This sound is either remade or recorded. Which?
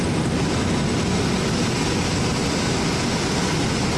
recorded